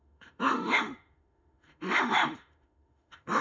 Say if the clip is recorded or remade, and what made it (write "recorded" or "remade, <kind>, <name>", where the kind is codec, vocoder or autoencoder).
remade, autoencoder, DAC-VAE